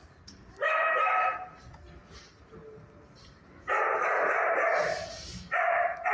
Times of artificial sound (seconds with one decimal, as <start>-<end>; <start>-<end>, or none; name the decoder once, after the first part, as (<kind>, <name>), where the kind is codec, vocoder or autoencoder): none